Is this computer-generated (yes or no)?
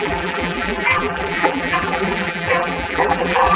yes